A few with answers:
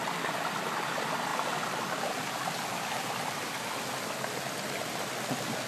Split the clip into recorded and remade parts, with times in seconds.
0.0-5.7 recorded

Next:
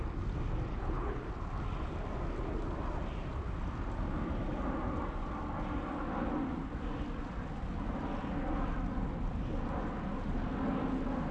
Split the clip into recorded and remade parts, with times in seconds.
0.0-0.7 recorded; 0.7-1.3 remade; 1.3-11.3 recorded

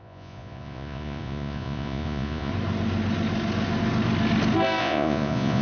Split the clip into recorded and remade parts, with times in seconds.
0.0-2.5 remade; 2.5-4.8 recorded; 4.8-5.6 remade